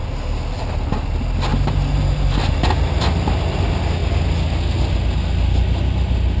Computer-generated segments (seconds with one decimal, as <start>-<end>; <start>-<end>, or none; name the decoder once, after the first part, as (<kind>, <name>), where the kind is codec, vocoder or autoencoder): 1.5-2.5 (vocoder, BigVGAN v2)

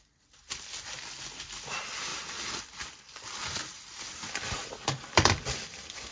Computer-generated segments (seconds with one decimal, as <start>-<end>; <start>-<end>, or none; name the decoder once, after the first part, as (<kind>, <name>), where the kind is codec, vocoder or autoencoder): 2.1-6.1 (vocoder, BigVGAN v2)

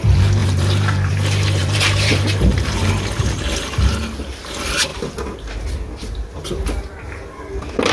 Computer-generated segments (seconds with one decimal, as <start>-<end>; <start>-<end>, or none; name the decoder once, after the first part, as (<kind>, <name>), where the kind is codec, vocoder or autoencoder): 0.4-1.1 (vocoder, BigVGAN v2); 1.6-2.9

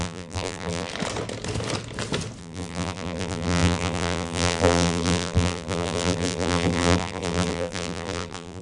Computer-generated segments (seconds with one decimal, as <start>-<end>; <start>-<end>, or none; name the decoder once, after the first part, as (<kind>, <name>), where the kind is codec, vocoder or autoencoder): 0.0-0.9 (vocoder, BigVGAN v2); 2.4-8.6

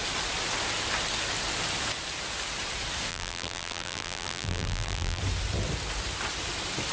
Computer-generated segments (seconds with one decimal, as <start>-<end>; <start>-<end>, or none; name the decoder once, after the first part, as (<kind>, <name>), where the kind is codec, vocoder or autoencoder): 3.1-5.2 (vocoder, BigVGAN v2)

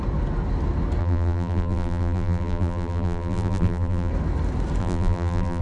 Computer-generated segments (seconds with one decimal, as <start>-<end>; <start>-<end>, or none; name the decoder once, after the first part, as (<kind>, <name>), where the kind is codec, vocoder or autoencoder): 1.0-4.1 (vocoder, BigVGAN v2); 4.8-5.6